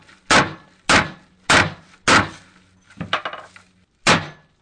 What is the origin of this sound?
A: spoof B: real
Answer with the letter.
B